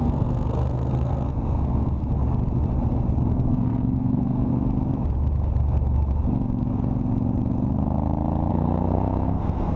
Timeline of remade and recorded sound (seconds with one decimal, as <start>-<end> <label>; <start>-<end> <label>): 0.0-2.0 remade; 2.0-3.3 recorded; 3.3-4.5 remade; 4.5-8.5 recorded; 8.5-9.8 remade